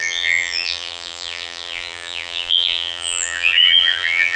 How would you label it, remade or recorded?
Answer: remade